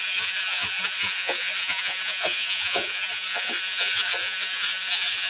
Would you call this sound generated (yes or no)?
yes